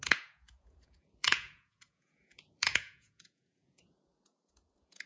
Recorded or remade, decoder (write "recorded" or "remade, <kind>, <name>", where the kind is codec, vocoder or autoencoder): remade, vocoder, Vocos